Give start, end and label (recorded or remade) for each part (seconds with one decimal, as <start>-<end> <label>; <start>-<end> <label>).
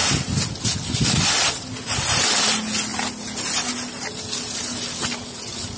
0.0-5.8 recorded